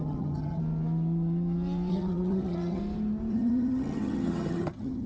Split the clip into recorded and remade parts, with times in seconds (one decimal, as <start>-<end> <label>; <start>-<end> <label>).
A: 0.0-0.6 remade; 0.6-1.9 recorded; 1.9-2.8 remade; 2.8-3.3 recorded; 3.3-5.1 remade